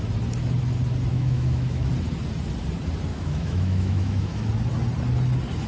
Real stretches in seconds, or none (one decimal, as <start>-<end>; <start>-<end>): 0.0-1.1; 1.9-3.1; 4.5-5.7